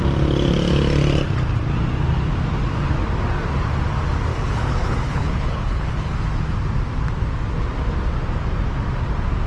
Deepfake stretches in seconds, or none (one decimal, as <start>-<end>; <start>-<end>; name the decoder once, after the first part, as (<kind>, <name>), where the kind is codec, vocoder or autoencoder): 4.3-6.1 (codec, HILCodec)